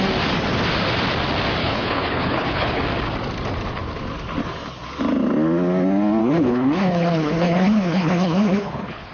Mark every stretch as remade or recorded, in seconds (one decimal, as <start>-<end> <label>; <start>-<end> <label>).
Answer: 0.0-1.6 recorded; 1.6-2.8 remade; 2.8-6.2 recorded; 6.2-9.1 remade